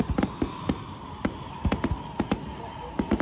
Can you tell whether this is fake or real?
real